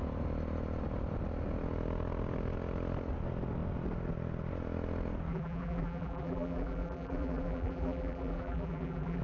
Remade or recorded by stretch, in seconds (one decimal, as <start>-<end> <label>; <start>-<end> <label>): 0.0-5.3 recorded; 5.3-9.2 remade